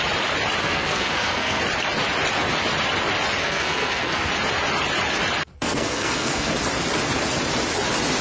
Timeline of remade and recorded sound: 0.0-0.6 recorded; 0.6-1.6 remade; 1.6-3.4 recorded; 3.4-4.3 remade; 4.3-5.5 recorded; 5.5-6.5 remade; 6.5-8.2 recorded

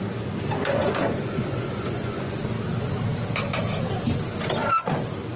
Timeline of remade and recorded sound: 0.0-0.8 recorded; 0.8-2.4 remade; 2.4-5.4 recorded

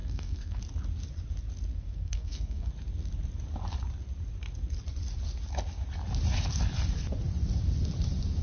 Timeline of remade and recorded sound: 0.0-0.6 remade; 0.6-1.7 recorded; 1.7-2.7 remade; 2.7-8.4 recorded